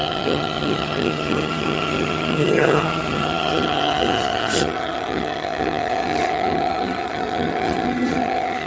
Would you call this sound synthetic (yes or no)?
yes